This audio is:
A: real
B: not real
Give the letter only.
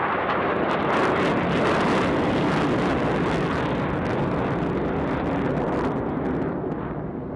A